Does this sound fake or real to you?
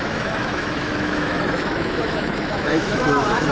fake